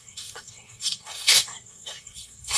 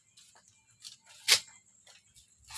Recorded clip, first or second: second